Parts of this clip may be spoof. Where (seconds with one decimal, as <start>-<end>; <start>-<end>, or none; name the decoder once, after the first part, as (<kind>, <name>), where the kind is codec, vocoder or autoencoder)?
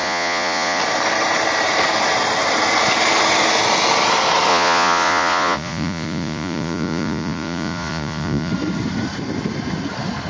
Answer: 0.0-0.8 (vocoder, Vocos); 4.5-8.5